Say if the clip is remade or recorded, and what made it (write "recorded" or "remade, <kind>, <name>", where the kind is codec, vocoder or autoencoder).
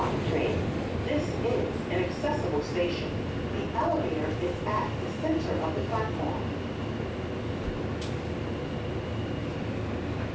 recorded